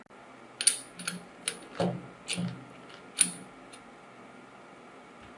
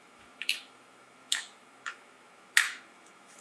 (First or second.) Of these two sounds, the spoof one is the second